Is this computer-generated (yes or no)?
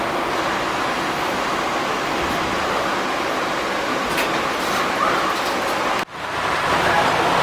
no